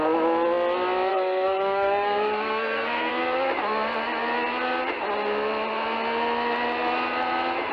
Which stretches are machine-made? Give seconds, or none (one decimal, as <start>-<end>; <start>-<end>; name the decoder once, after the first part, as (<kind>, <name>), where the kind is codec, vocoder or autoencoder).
1.1-3.1 (codec, SNAC)